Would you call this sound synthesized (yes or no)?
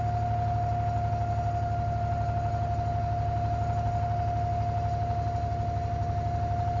no